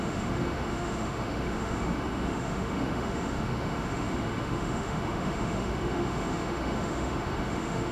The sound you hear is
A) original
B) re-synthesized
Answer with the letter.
B